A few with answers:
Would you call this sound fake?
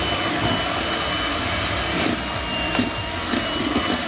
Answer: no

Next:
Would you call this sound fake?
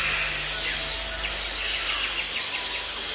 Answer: no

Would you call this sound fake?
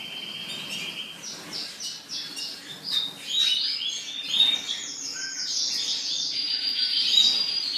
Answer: no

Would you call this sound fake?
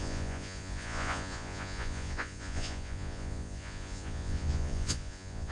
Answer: yes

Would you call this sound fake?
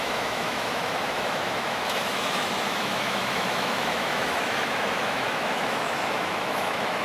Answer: yes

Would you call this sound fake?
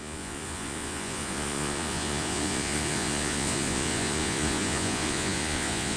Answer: yes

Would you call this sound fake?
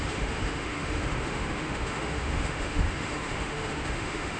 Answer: yes